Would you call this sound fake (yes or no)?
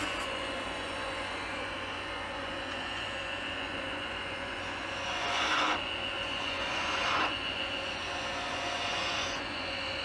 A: yes